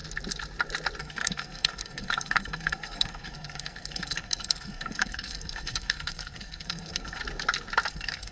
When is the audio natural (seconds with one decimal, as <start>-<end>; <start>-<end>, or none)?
0.0-1.0; 7.2-7.9